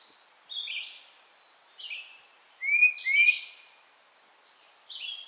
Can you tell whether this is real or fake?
real